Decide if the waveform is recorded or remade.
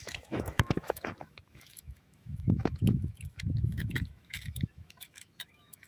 remade